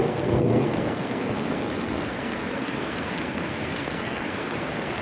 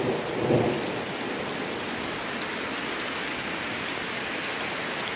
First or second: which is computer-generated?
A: first